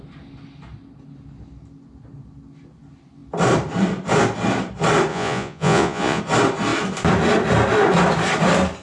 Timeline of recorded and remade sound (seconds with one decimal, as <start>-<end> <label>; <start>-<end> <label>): 0.0-5.1 recorded; 5.1-6.2 remade; 6.2-8.8 recorded